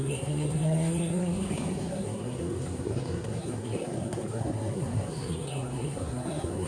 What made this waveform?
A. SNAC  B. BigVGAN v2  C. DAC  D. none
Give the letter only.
A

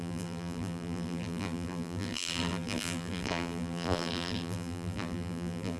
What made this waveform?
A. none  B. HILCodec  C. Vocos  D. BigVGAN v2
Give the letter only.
D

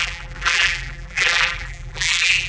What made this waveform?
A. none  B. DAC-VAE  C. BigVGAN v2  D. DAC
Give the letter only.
C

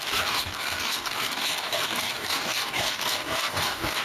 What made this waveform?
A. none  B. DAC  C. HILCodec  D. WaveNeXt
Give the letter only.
B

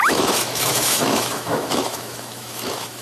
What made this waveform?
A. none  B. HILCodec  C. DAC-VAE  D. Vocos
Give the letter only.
C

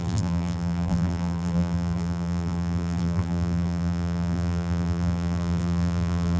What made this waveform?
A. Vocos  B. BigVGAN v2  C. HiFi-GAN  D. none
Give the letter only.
B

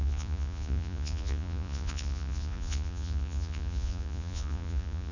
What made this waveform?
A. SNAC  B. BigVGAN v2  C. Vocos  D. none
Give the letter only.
C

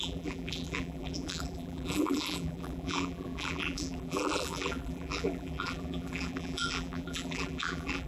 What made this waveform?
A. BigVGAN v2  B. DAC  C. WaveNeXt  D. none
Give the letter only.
A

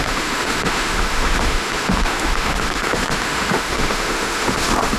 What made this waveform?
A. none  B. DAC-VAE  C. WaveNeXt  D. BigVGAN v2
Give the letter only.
B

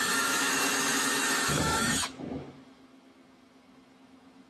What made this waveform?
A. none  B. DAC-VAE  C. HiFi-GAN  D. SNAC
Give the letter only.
B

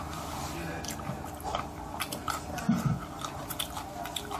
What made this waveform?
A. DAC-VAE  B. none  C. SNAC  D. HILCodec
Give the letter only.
B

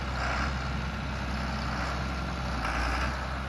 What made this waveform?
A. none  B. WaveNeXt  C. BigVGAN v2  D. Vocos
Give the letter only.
A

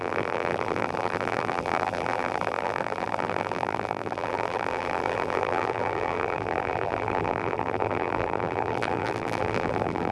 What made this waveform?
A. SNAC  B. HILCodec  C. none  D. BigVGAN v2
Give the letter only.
D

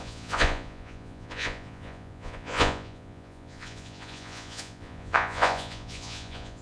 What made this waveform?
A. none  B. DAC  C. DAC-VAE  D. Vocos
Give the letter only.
D